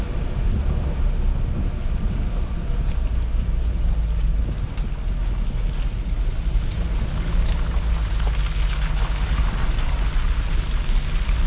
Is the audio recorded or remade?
recorded